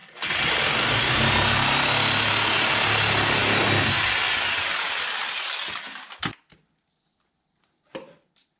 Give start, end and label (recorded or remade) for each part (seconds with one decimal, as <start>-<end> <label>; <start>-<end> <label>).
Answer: 0.0-8.6 recorded